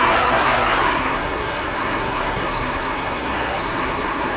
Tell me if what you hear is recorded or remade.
remade